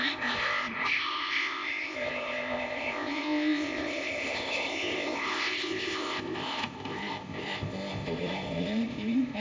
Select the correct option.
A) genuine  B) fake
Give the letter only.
B